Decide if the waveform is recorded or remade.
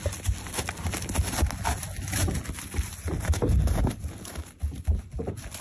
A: recorded